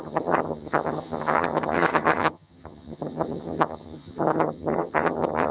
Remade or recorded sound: remade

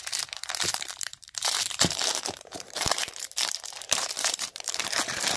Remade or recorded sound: remade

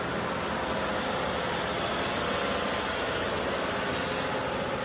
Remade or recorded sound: recorded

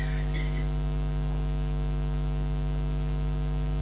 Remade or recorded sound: recorded